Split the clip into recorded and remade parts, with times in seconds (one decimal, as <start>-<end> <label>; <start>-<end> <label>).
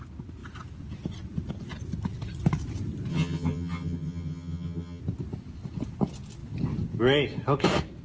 0.0-3.1 recorded; 3.1-5.0 remade; 5.0-8.0 recorded